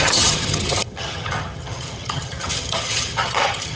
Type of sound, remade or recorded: remade